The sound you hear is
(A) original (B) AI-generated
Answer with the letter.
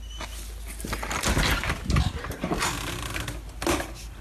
A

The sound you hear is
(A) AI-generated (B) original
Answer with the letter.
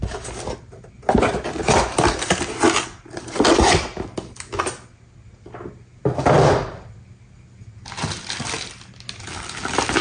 B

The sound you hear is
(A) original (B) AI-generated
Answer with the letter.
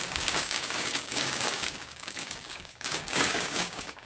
B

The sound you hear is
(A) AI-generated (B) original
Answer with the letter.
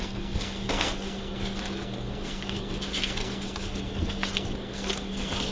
A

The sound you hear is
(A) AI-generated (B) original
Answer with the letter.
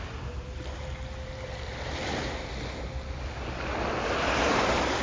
B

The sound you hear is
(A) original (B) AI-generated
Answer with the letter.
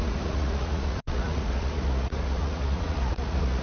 B